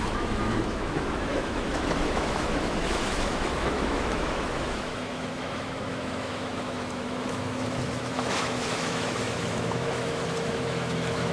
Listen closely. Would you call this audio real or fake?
fake